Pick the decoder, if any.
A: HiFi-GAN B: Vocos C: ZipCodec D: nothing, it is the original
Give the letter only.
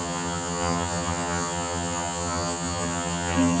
A